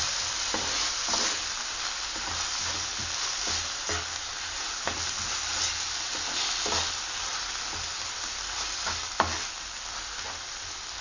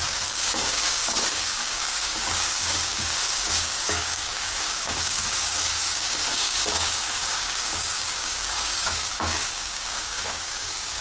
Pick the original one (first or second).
first